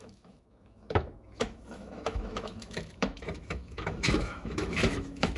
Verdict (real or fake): fake